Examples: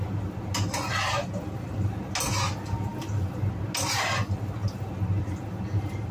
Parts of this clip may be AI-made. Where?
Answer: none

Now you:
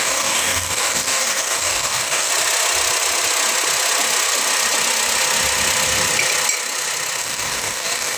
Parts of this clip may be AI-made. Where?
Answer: 0.0-2.3 (codec, DAC); 7.2-8.2

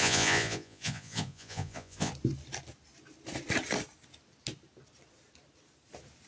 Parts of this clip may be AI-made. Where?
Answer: 0.0-2.1 (vocoder, Vocos)

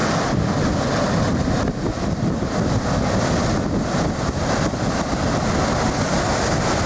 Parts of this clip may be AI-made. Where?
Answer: none

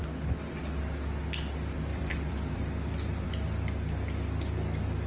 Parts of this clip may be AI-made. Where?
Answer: 1.9-3.6 (vocoder, BigVGAN v2)

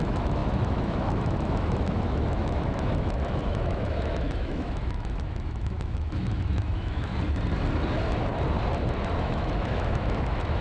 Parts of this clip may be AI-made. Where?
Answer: 0.0-7.1 (autoencoder, DAC-VAE); 9.2-10.6